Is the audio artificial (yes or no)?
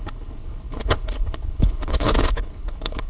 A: yes